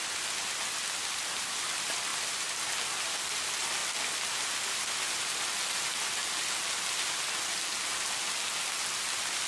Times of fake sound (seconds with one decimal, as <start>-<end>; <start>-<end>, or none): none